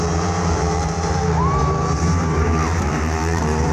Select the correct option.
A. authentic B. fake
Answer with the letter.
B